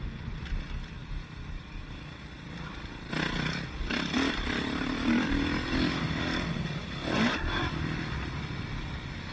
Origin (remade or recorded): recorded